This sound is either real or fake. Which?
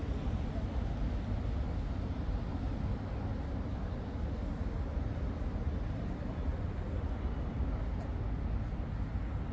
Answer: real